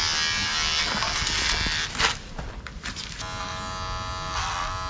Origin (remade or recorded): recorded